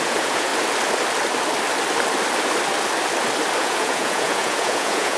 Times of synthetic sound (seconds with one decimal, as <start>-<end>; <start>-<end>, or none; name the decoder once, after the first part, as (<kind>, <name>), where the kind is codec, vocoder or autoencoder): 0.0-0.5 (vocoder, Vocos); 3.6-5.2